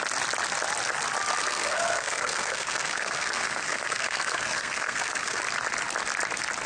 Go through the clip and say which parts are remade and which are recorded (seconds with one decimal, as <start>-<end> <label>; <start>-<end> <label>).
0.0-1.4 recorded; 1.4-5.4 remade; 5.4-6.7 recorded